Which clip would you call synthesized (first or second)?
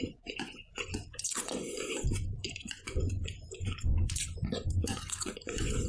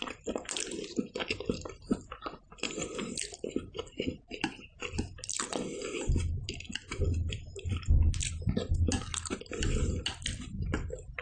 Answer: first